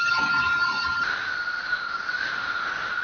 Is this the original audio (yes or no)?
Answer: yes